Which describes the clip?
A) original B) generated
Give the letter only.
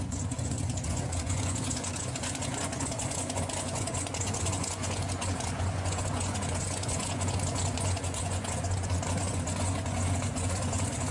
B